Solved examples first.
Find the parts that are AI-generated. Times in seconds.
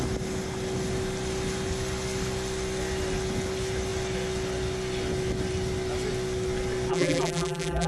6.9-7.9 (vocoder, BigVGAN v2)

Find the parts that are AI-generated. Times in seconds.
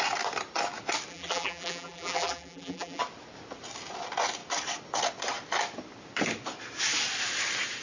1.1-3.0 (vocoder, BigVGAN v2)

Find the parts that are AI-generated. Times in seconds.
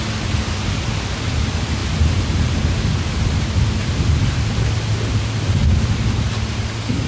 none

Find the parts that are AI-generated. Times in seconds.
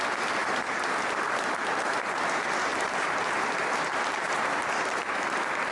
0.4-2.2 (vocoder, BigVGAN v2); 2.7-4.7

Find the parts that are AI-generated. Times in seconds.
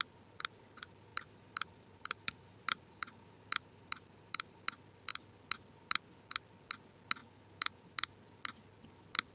1.1-4.6 (vocoder, BigVGAN v2); 7.2-8.1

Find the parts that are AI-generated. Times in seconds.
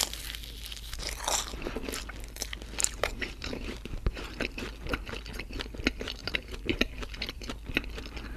2.8-4.4 (vocoder, BigVGAN v2); 6.2-7.4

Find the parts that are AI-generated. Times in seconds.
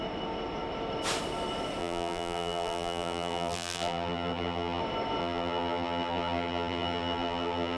1.8-4.8 (vocoder, BigVGAN v2); 5.2-7.8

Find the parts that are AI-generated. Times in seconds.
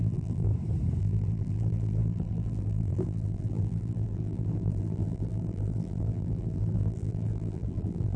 0.0-0.5 (vocoder, BigVGAN v2); 1.0-8.2